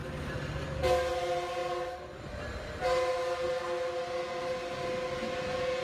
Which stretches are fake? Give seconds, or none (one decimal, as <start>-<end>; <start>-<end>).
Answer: none